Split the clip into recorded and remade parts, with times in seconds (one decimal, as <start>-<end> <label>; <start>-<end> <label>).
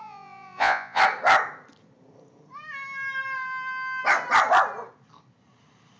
0.0-1.0 remade; 1.0-6.0 recorded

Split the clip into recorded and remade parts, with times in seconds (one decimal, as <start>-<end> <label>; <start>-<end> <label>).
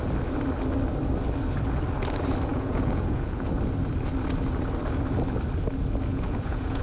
0.0-2.5 recorded; 2.5-3.5 remade; 3.5-6.1 recorded; 6.1-6.8 remade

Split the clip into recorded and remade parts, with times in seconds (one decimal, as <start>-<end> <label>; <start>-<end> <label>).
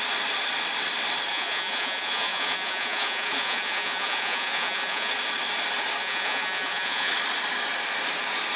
0.0-1.3 recorded; 1.3-5.1 remade; 5.1-6.0 recorded; 6.0-7.1 remade; 7.1-8.6 recorded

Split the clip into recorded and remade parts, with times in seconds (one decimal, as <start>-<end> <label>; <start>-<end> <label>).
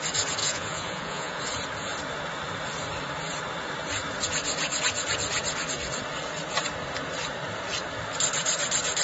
0.0-0.4 recorded; 0.4-1.4 remade; 1.4-9.0 recorded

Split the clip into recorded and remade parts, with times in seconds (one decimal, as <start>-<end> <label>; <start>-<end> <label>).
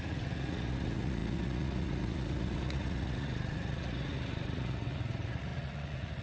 0.0-6.2 remade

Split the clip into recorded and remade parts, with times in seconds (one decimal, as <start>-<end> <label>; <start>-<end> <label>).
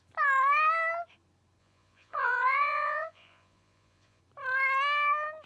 0.0-1.6 recorded; 1.6-4.2 remade; 4.2-5.5 recorded